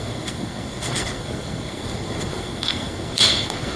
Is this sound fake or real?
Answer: fake